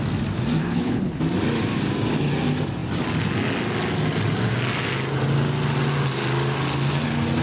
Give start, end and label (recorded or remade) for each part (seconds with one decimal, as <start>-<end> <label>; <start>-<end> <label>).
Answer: 0.0-0.6 recorded; 0.6-1.2 remade; 1.2-7.4 recorded